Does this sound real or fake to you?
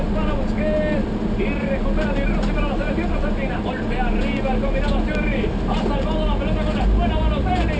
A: real